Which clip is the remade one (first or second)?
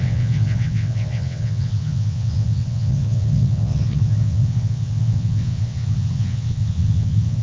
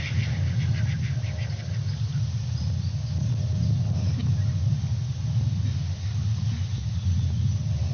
first